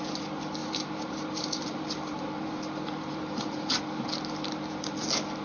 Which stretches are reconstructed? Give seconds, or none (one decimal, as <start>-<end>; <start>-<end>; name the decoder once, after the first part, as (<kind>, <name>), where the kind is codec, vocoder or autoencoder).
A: 0.6-3.8 (vocoder, BigVGAN v2)